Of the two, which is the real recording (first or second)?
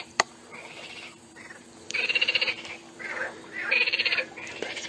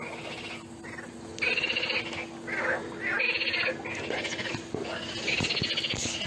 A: second